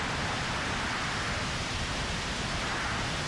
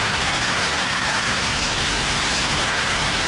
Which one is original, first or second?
first